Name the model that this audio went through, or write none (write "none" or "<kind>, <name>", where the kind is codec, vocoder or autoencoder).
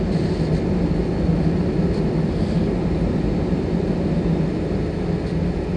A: none